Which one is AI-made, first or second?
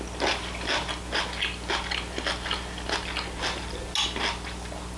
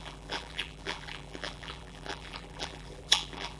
second